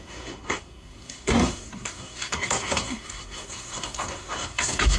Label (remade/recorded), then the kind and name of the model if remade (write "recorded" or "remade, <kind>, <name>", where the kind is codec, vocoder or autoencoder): remade, codec, SNAC